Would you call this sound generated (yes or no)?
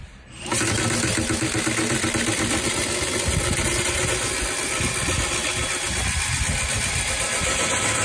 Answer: no